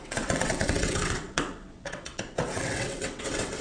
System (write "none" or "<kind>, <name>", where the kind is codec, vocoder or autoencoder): vocoder, WaveNeXt